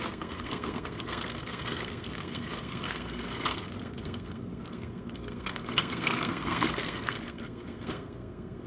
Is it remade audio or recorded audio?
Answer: remade